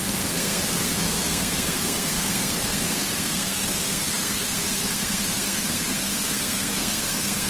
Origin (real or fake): fake